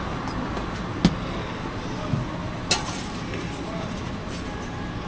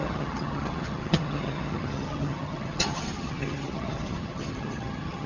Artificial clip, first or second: second